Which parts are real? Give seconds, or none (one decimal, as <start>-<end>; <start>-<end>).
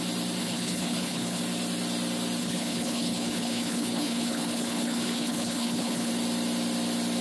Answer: 0.0-0.4; 1.4-2.4; 6.1-7.2